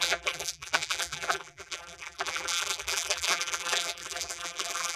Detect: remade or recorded remade